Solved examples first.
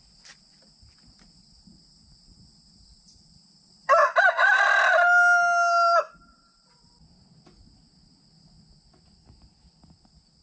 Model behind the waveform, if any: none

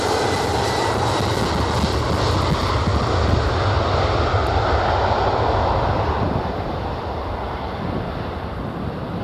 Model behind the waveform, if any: none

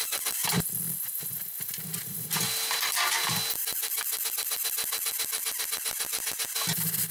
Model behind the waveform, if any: none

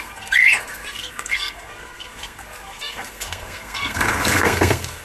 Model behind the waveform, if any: codec, SNAC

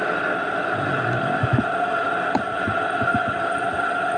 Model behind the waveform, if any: none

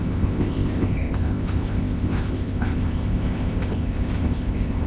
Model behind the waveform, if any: codec, ZipCodec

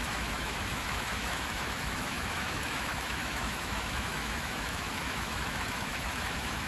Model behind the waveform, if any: autoencoder, DAC-VAE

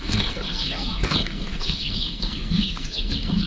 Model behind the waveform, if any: codec, SNAC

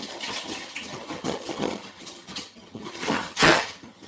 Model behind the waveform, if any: vocoder, HiFi-GAN